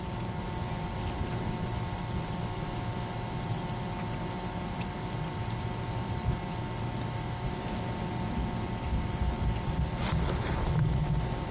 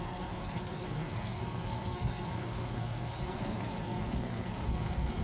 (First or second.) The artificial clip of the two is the second